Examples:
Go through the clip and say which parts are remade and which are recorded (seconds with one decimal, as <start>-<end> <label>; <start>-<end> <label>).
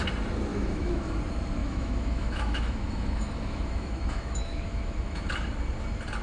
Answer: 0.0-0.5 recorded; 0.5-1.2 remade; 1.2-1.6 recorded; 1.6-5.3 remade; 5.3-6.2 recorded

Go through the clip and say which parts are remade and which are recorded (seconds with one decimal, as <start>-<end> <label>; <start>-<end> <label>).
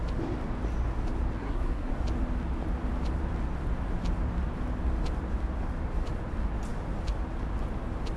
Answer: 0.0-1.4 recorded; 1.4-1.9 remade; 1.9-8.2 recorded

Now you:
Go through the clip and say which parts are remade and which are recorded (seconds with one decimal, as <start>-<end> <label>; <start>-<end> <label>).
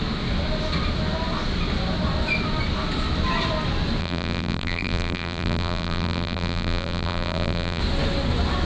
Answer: 0.0-4.0 recorded; 4.0-7.8 remade; 7.8-8.6 recorded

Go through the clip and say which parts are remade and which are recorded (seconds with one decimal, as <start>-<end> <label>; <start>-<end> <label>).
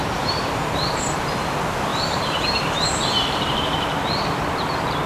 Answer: 0.0-1.0 remade; 1.0-1.9 recorded; 1.9-5.1 remade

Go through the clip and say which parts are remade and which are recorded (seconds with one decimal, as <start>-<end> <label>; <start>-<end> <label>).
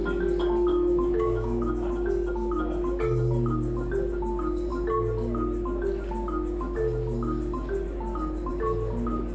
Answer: 0.0-0.7 recorded; 0.7-1.7 remade; 1.7-9.3 recorded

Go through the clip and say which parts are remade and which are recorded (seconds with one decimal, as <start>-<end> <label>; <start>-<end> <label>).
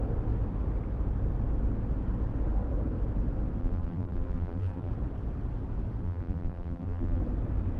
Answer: 0.0-3.6 recorded; 3.6-4.9 remade; 4.9-6.0 recorded; 6.0-7.2 remade; 7.2-7.8 recorded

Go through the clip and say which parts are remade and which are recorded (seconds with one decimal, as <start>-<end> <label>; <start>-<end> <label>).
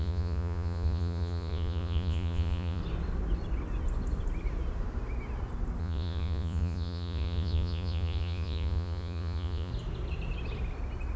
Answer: 0.0-2.8 remade; 2.8-5.8 recorded; 5.8-9.7 remade; 9.7-11.2 recorded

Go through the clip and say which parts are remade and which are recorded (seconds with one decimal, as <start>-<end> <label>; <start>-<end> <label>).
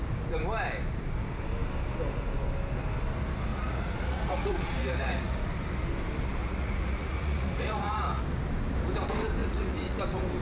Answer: 0.0-3.5 recorded; 3.5-5.4 remade; 5.4-6.4 recorded; 6.4-8.2 remade; 8.2-9.4 recorded; 9.4-10.0 remade; 10.0-10.4 recorded